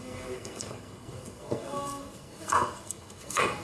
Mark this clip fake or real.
fake